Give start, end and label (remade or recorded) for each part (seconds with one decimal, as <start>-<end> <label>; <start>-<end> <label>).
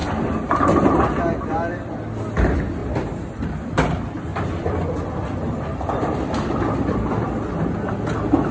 0.0-2.8 recorded; 2.8-3.5 remade; 3.5-4.3 recorded; 4.3-8.5 remade